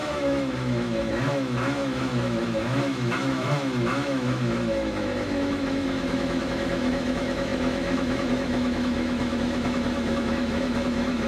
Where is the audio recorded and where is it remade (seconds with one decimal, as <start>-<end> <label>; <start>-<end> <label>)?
0.0-11.3 remade